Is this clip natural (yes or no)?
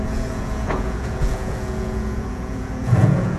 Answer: no